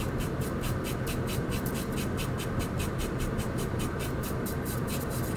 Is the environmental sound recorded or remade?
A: remade